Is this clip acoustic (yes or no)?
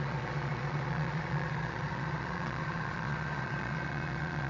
no